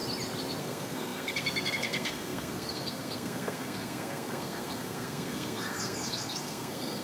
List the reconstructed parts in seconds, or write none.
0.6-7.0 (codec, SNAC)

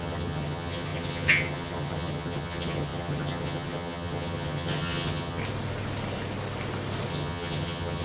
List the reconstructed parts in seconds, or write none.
0.0-5.4 (vocoder, HiFi-GAN); 7.1-8.0

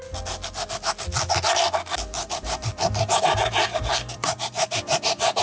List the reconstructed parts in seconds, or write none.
2.1-5.4 (vocoder, BigVGAN v2)

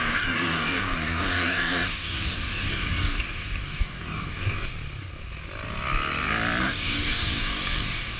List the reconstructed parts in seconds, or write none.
0.0-4.7 (codec, DAC); 6.6-8.2

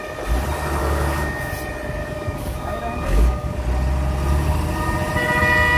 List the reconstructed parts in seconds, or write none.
0.8-1.5 (codec, DAC); 2.0-3.6

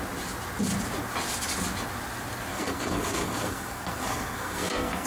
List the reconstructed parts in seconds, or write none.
2.5-5.1 (codec, SNAC)

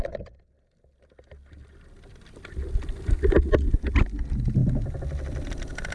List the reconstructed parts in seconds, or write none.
none

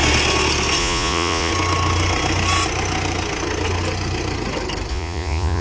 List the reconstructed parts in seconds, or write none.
0.8-1.5 (vocoder, Vocos); 4.9-5.6